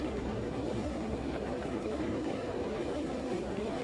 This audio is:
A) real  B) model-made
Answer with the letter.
B